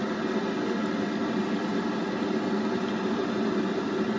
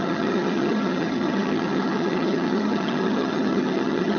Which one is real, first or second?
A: first